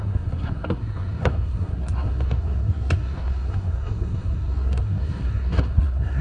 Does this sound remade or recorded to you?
remade